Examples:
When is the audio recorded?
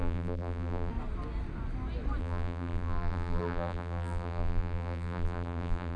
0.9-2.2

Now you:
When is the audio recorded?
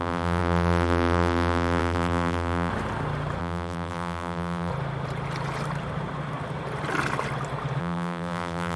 2.7-3.4; 4.7-7.8